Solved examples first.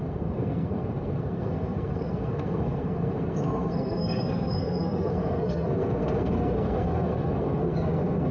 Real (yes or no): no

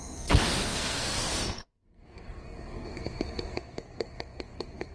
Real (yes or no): no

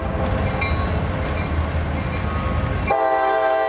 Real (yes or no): yes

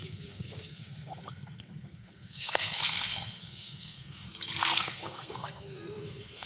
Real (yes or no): no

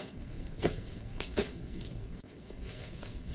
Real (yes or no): no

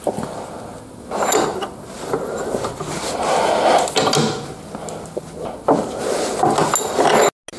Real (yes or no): yes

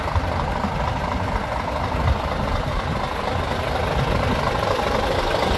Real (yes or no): yes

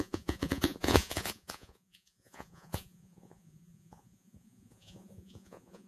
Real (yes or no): no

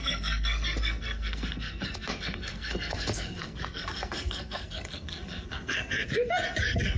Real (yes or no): no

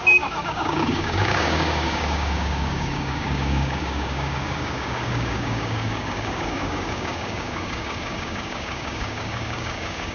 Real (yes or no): no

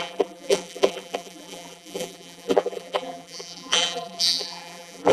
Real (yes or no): no